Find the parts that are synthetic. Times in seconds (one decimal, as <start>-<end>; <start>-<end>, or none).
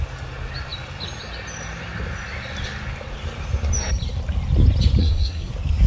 5.0-5.5